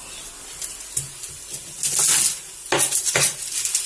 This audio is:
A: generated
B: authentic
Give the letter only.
B